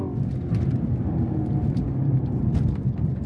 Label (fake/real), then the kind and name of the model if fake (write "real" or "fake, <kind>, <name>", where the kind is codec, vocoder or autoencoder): real